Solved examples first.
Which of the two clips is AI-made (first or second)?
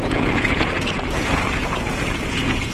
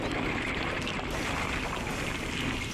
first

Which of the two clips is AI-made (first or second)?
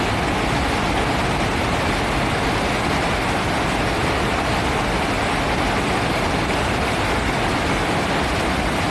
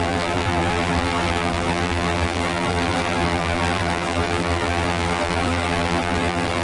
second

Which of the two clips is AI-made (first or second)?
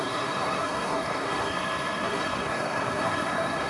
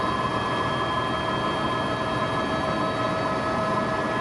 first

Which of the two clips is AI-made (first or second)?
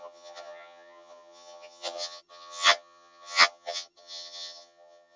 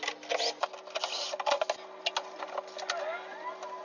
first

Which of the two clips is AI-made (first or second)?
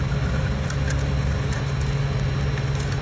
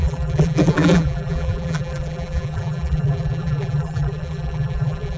second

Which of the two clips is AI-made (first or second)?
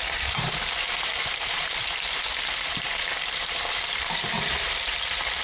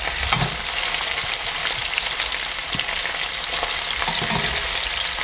first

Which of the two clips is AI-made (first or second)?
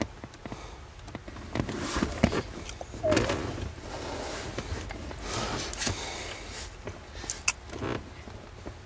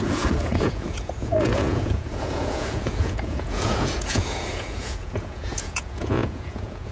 second